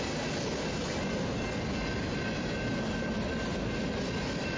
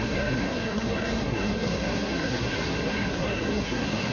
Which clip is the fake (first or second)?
second